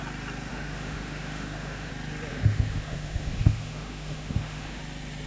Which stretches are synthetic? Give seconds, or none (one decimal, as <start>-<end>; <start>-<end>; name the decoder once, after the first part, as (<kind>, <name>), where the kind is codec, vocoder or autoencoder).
0.5-1.9 (autoencoder, DAC-VAE); 2.3-4.8